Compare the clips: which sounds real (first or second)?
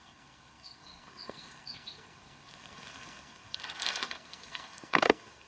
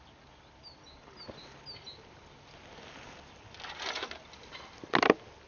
second